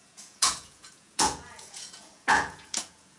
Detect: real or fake fake